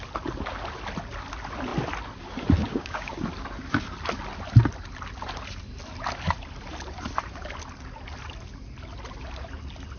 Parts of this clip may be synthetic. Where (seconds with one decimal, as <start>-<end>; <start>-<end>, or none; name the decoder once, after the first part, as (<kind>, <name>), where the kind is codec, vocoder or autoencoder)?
2.6-3.1 (codec, DAC)

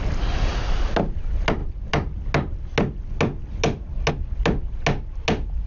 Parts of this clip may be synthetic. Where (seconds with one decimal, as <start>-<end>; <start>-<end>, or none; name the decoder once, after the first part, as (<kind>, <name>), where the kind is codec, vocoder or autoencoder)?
none

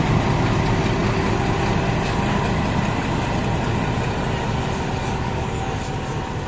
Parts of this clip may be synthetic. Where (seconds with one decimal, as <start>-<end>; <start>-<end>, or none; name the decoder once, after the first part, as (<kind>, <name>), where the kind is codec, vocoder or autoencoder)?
5.0-5.8 (codec, DAC)